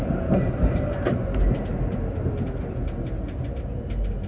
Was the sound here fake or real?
real